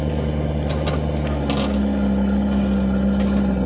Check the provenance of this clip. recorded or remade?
recorded